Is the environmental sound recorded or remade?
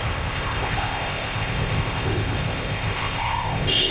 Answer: remade